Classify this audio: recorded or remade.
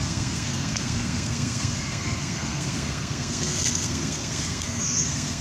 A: remade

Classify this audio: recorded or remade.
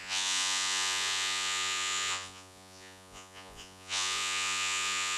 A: remade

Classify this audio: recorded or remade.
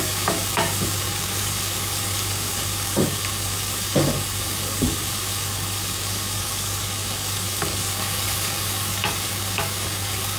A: remade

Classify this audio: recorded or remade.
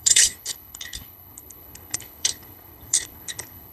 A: remade